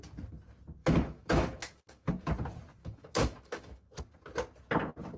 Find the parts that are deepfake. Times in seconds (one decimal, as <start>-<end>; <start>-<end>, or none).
0.8-2.1; 2.8-4.0